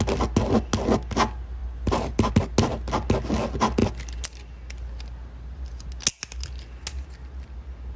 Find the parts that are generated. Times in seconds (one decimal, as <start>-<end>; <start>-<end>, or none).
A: 1.6-2.3